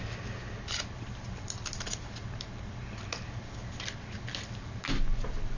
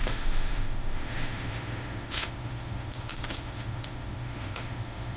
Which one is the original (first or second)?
first